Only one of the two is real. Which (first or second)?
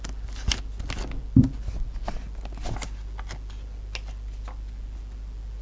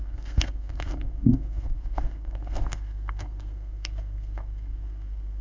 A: first